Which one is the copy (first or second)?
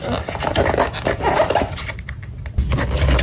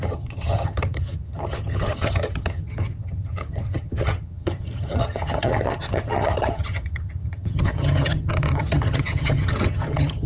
second